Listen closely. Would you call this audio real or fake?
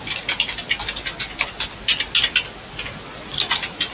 real